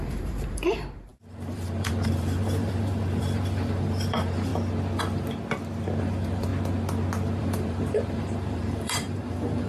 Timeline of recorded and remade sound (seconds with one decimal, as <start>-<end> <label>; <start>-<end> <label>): 0.0-4.5 remade; 4.5-6.0 recorded; 6.0-6.5 remade; 6.5-7.4 recorded; 7.4-9.7 remade